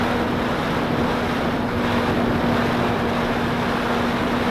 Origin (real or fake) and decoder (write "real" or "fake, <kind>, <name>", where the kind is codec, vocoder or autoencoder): real